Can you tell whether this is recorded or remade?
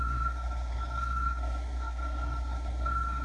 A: remade